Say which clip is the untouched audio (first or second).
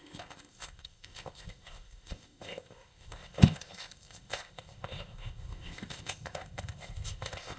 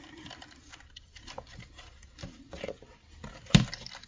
second